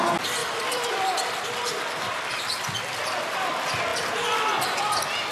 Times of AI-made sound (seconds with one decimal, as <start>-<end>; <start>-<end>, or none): 0.4-2.3